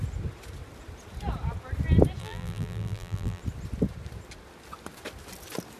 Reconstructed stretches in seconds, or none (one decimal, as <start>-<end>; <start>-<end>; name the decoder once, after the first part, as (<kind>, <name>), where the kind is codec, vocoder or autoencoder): 2.2-3.4 (vocoder, BigVGAN v2)